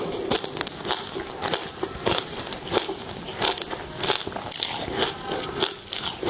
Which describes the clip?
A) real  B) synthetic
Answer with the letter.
A